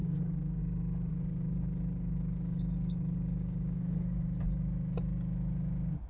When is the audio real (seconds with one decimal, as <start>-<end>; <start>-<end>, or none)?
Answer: 0.6-1.1; 4.2-6.1